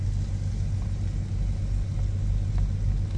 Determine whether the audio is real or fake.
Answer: real